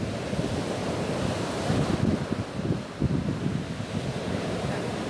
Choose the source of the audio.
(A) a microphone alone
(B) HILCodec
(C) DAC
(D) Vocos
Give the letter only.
A